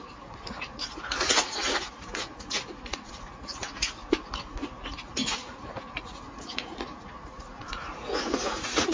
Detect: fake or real fake